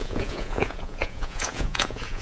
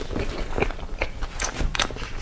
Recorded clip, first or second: second